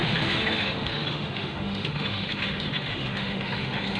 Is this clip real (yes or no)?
no